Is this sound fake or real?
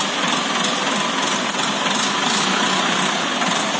real